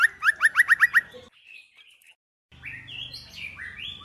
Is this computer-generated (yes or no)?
no